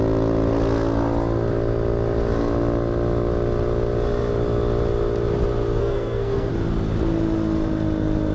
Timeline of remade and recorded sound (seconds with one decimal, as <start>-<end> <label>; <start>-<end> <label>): 0.0-5.8 recorded; 5.8-6.5 remade; 6.5-8.3 recorded